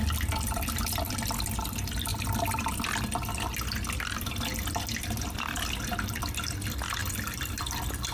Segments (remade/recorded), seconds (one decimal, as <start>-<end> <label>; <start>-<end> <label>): 0.0-7.0 recorded; 7.0-7.6 remade; 7.6-8.1 recorded